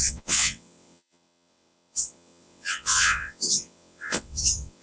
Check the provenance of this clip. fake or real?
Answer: fake